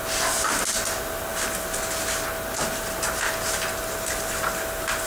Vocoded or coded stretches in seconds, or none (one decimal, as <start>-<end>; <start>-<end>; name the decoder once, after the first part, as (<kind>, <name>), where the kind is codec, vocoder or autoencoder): none